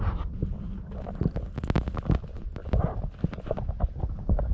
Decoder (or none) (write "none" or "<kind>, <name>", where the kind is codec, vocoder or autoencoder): none